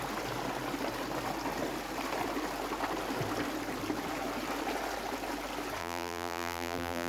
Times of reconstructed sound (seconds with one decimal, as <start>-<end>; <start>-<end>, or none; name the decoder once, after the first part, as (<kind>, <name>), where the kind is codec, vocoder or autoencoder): 5.8-7.1 (vocoder, BigVGAN v2)